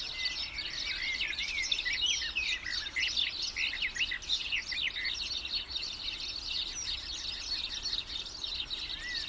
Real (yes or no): yes